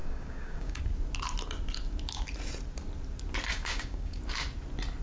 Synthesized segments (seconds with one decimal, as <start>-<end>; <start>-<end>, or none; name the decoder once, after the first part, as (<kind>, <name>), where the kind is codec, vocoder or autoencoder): 0.0-0.8 (codec, DAC); 3.5-4.2